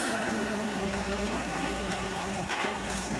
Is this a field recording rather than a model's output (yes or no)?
no